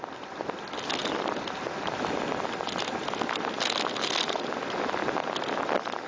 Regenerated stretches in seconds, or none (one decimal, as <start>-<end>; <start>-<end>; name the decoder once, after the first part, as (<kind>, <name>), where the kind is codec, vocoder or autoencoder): none